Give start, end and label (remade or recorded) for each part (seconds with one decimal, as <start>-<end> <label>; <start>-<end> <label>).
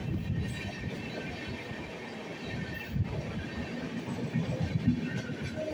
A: 0.0-1.2 remade; 1.2-2.3 recorded; 2.3-3.2 remade; 3.2-5.7 recorded